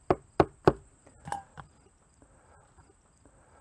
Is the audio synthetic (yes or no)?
no